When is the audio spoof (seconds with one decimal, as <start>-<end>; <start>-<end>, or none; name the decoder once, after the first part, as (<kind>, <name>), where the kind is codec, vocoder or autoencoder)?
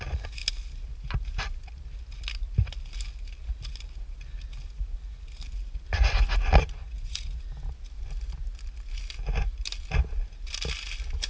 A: 6.8-7.4 (vocoder, Vocos)